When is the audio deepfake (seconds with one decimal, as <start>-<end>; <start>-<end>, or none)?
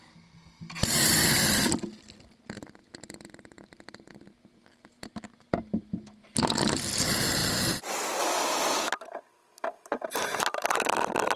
none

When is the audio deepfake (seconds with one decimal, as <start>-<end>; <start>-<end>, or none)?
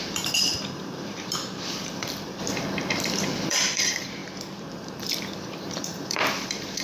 0.0-2.4; 3.5-6.8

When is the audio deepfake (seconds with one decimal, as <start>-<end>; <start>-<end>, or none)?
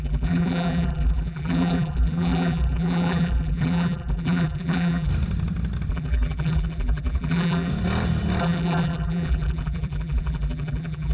0.0-5.1; 5.9-7.7; 8.4-11.1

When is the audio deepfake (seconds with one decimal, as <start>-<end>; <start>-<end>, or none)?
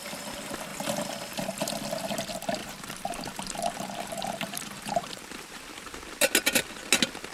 2.6-6.0